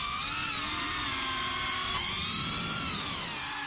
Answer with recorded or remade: recorded